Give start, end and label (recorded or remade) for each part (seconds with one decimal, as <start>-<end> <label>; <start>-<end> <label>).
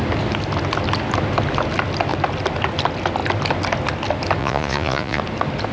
0.0-4.4 recorded; 4.4-5.2 remade; 5.2-5.7 recorded